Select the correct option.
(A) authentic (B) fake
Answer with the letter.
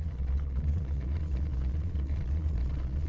B